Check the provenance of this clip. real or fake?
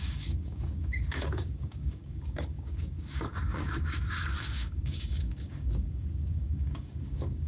fake